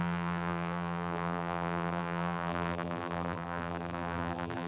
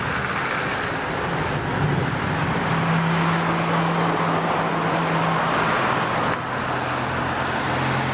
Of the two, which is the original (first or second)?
second